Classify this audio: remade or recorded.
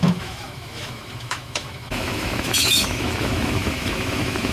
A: remade